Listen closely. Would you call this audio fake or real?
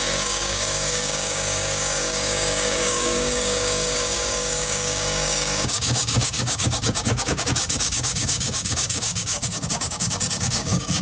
fake